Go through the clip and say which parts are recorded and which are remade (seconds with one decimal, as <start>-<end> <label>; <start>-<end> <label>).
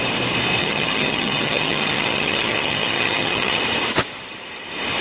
0.0-0.6 recorded; 0.6-3.6 remade; 3.6-5.0 recorded